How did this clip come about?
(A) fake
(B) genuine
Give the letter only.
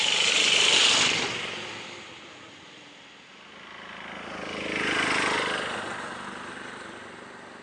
B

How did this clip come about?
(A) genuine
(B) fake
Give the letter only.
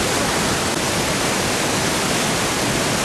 A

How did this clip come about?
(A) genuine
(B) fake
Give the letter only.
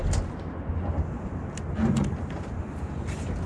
A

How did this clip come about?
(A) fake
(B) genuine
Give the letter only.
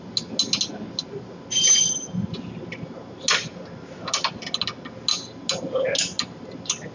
B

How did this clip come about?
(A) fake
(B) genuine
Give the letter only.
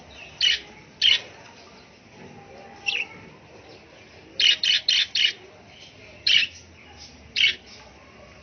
B